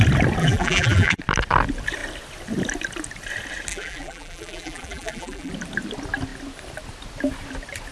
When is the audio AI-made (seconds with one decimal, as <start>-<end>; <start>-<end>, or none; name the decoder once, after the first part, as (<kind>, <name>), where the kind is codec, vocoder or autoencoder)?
0.4-1.2 (vocoder, BigVGAN v2); 3.7-5.5